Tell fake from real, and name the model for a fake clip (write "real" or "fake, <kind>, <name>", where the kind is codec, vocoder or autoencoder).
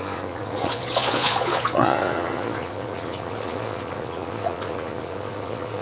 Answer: fake, vocoder, Vocos